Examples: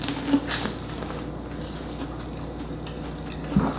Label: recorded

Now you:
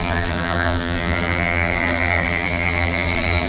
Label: remade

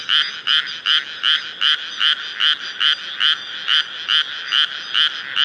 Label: recorded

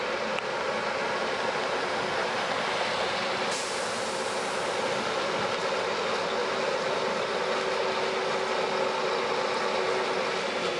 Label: recorded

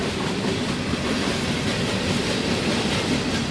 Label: recorded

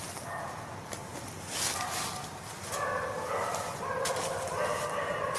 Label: recorded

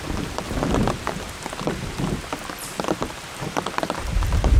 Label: remade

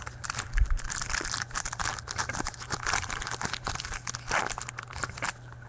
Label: remade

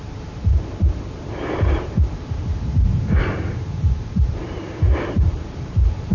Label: remade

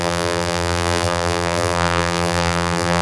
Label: remade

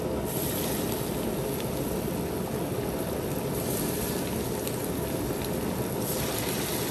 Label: recorded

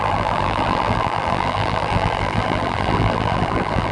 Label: remade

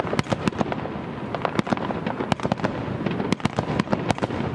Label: recorded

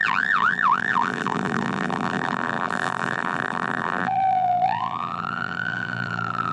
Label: remade